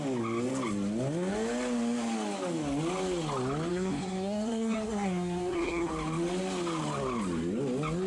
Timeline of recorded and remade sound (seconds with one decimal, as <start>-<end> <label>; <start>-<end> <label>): 0.0-3.7 recorded; 3.7-5.9 remade; 5.9-8.1 recorded